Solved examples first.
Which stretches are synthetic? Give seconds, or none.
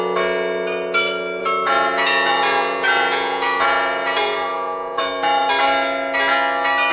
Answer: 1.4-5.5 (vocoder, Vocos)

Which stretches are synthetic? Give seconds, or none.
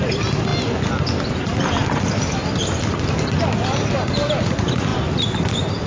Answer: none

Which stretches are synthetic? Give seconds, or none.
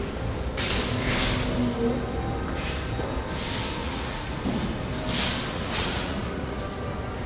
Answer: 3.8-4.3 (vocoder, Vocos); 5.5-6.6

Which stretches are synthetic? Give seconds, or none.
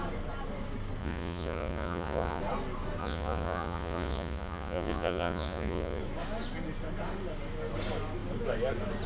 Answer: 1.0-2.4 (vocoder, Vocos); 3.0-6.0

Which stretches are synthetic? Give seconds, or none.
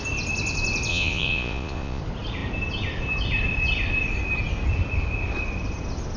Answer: 0.9-2.0 (vocoder, Vocos)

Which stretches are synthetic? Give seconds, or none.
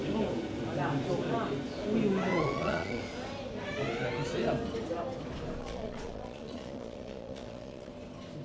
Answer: 2.3-3.0 (vocoder, Vocos); 5.6-7.9